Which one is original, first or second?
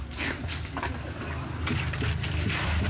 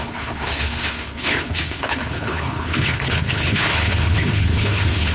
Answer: first